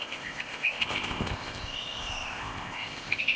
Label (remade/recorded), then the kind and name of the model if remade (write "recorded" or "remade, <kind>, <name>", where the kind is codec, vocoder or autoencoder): remade, codec, ZipCodec